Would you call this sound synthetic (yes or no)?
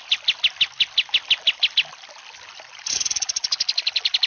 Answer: no